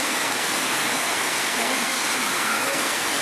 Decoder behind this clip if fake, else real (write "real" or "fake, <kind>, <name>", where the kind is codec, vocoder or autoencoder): fake, codec, SNAC